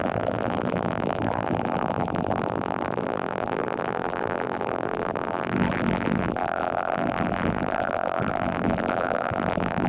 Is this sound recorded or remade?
remade